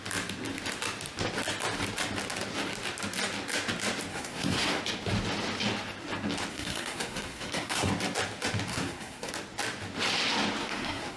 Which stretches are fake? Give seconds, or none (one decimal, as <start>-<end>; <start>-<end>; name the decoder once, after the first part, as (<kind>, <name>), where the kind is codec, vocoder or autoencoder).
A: 4.1-4.8 (codec, SNAC); 6.5-7.9; 8.7-9.3; 10.6-11.2